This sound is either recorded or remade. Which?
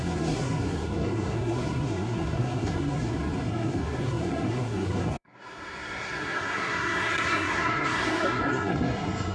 remade